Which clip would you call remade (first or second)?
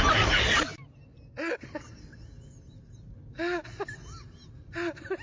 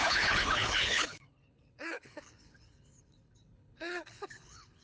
second